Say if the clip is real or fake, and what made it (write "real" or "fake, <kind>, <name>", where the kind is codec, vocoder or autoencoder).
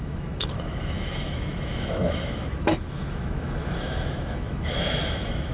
fake, autoencoder, DAC-VAE